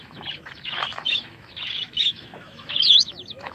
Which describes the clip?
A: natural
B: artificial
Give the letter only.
B